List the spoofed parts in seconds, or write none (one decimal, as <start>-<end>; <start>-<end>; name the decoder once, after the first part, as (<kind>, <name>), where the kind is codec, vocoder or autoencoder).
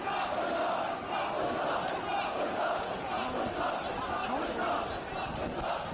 2.1-3.4 (vocoder, Vocos)